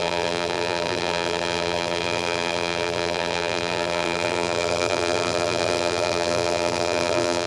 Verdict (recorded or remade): remade